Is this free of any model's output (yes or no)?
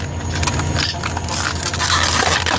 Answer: yes